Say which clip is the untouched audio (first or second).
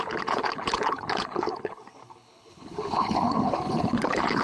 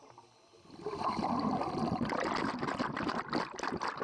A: second